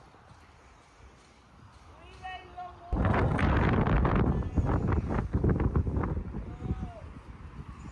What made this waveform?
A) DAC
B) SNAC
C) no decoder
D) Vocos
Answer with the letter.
C